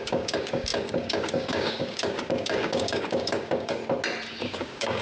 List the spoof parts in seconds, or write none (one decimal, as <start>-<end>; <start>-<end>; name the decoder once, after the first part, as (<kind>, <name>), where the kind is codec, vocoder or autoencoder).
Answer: 0.0-3.8 (codec, DAC); 4.4-5.0